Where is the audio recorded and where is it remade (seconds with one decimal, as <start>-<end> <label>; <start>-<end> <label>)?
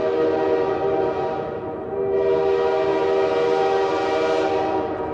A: 0.0-5.1 recorded